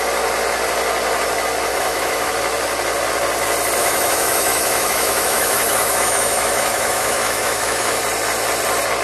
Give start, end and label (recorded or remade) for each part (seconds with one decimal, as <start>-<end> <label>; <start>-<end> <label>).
0.0-1.7 recorded; 1.7-2.3 remade; 2.3-3.8 recorded; 3.8-8.0 remade; 8.0-9.0 recorded